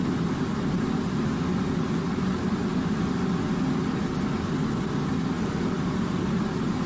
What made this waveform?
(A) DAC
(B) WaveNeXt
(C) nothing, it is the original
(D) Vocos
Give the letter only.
C